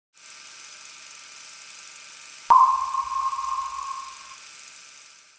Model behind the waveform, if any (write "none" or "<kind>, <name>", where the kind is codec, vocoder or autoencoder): none